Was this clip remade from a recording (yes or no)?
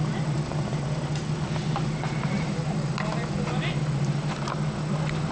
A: no